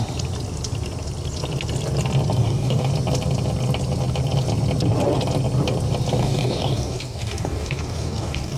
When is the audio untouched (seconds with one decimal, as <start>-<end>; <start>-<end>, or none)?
0.0-2.4; 2.9-6.2